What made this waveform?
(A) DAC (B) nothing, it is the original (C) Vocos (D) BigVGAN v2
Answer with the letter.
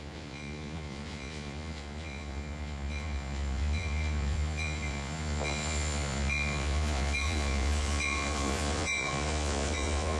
C